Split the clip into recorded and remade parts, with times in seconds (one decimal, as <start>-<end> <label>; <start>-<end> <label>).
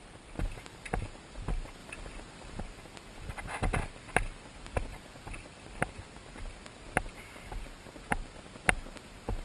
0.0-1.8 recorded; 1.8-2.6 remade; 2.6-9.4 recorded